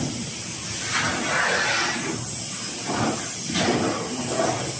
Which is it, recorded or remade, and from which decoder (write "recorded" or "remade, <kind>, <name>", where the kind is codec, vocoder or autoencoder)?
recorded